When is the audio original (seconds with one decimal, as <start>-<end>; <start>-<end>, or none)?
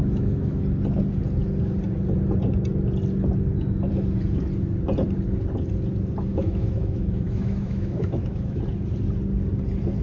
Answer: 0.6-6.3; 8.6-10.0